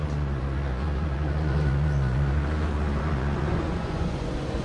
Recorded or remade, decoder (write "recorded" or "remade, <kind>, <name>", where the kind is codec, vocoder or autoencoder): remade, vocoder, Vocos